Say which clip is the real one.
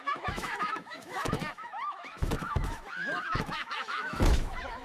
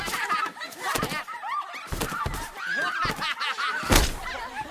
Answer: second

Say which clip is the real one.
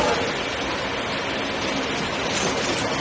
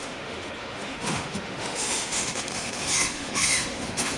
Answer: first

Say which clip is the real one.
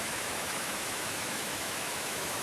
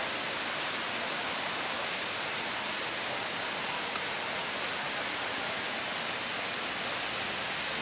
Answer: second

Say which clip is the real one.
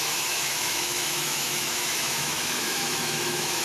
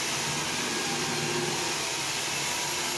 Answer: second